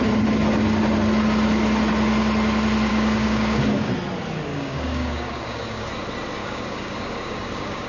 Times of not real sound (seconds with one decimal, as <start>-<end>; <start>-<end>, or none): 2.9-3.9; 4.5-5.9; 6.4-7.9

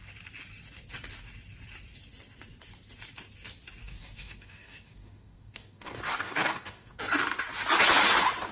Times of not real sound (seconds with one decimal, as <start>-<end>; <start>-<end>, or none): 3.8-7.0

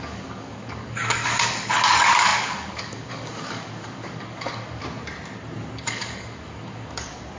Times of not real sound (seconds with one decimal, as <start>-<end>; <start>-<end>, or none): 0.0-4.8; 5.5-7.4

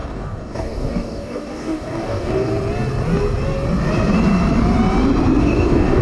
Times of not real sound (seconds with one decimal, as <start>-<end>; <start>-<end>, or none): 0.0-2.5; 5.4-6.0